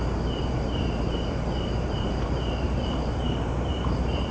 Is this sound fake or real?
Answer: fake